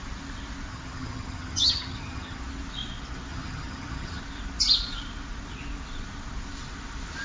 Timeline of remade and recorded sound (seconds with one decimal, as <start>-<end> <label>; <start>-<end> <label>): 0.0-0.7 recorded; 0.7-2.4 remade; 2.4-3.3 recorded; 3.3-4.2 remade; 4.2-7.2 recorded